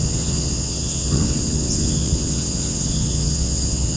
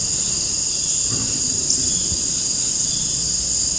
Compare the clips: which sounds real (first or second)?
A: second